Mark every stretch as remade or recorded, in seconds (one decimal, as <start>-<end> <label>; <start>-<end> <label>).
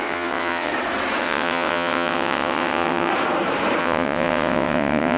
0.0-0.7 remade; 0.7-1.2 recorded; 1.2-3.1 remade; 3.1-3.8 recorded; 3.8-5.2 remade